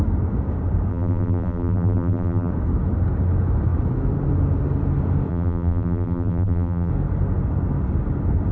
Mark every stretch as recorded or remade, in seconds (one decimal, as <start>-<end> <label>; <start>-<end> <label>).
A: 0.0-0.9 recorded; 0.9-2.5 remade; 2.5-5.3 recorded; 5.3-6.9 remade; 6.9-8.5 recorded